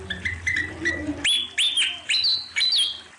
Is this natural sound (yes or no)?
yes